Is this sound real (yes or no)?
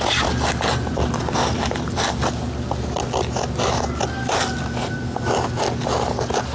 yes